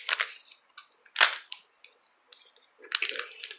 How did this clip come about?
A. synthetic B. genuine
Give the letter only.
B